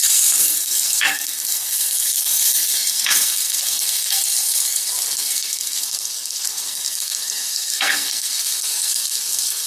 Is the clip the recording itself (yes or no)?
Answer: no